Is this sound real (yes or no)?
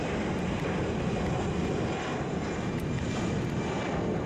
yes